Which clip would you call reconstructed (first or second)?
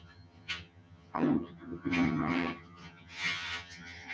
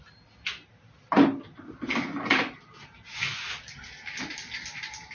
first